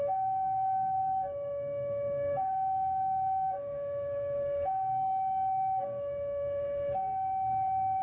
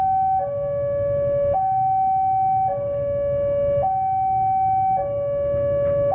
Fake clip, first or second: first